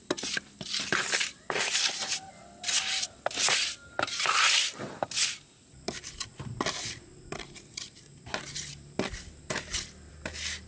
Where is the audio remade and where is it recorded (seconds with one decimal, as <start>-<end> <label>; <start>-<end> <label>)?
0.0-10.7 recorded